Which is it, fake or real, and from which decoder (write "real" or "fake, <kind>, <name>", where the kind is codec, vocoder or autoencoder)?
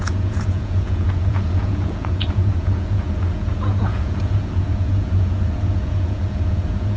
fake, vocoder, Vocos